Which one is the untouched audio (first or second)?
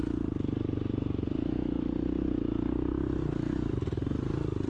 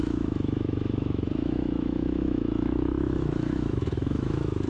first